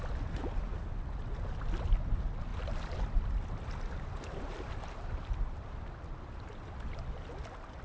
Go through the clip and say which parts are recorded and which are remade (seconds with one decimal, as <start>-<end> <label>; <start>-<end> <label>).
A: 0.0-0.4 recorded; 0.4-1.8 remade; 1.8-2.5 recorded; 2.5-5.8 remade; 5.8-7.8 recorded